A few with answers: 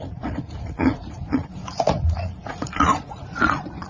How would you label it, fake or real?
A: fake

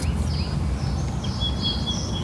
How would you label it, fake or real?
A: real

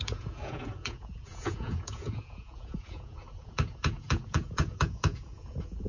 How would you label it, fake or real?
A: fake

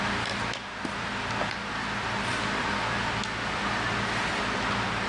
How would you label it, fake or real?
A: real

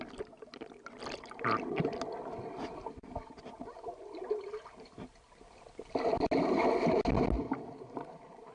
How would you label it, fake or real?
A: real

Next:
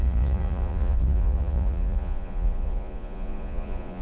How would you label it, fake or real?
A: fake